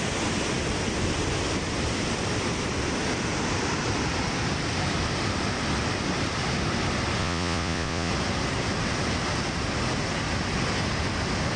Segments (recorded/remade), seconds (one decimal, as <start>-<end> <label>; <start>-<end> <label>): 0.0-7.2 recorded; 7.2-8.1 remade; 8.1-11.6 recorded